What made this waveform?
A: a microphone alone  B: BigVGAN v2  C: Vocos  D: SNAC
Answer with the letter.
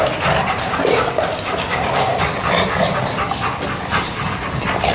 A